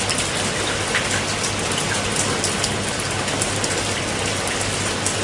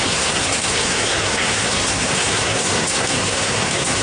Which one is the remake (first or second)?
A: second